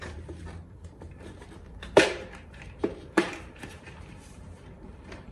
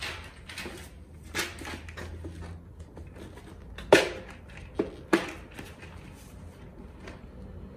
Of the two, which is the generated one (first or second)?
first